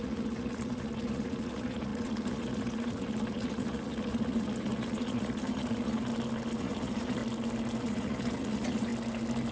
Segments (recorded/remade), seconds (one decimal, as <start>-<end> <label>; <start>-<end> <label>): 0.0-6.1 remade; 6.1-6.6 recorded; 6.6-7.2 remade; 7.2-7.8 recorded; 7.8-8.9 remade; 8.9-9.5 recorded